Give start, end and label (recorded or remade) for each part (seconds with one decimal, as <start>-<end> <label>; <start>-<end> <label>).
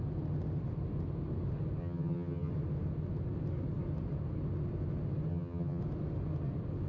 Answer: 0.0-1.8 recorded; 1.8-2.5 remade; 2.5-5.3 recorded; 5.3-5.8 remade; 5.8-6.9 recorded